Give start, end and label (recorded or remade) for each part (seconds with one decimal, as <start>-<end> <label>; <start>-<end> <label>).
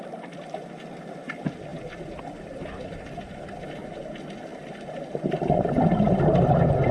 0.0-4.5 recorded; 4.5-5.2 remade; 5.2-6.9 recorded